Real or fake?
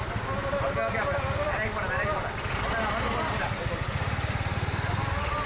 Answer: real